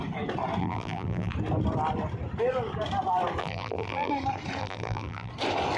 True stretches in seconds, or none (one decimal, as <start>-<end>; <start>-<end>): 0.0-0.6; 1.3-3.4; 4.1-4.6; 5.3-5.8